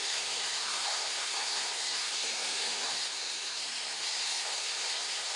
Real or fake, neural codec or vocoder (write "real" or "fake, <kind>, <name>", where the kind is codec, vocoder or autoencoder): fake, codec, SNAC